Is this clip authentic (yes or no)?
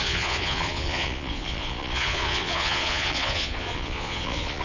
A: no